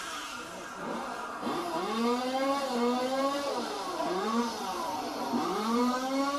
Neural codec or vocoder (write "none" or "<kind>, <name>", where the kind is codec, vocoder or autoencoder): vocoder, BigVGAN v2